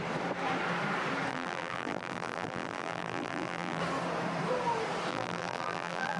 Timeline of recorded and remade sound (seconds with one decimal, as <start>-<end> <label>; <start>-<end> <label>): 0.0-1.3 recorded; 1.3-3.8 remade; 3.8-5.1 recorded; 5.1-6.2 remade